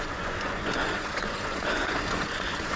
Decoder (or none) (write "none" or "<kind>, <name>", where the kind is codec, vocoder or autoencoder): vocoder, Vocos